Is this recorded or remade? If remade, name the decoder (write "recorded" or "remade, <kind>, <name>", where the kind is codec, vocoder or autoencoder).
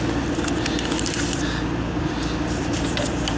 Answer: remade, vocoder, BigVGAN v2